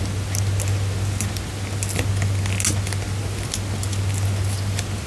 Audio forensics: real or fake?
real